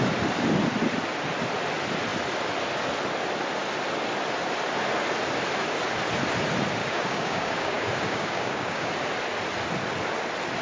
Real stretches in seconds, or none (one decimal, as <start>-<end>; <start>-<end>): 0.0-6.8; 8.9-10.6